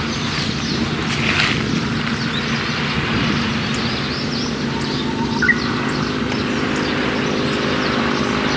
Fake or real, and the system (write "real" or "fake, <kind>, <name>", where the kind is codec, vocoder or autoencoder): real